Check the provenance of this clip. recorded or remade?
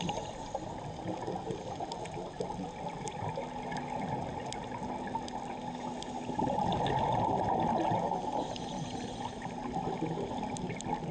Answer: recorded